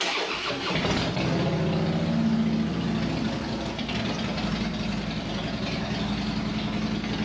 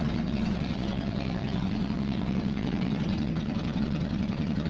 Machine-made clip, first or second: second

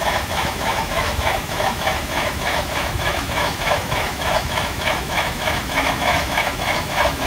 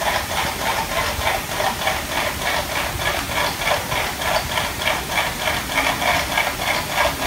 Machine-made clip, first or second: first